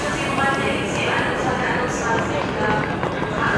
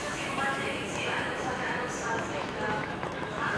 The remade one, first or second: second